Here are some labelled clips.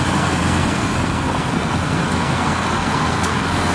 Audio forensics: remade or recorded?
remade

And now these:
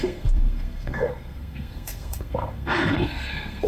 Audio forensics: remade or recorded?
remade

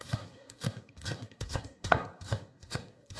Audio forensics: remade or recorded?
remade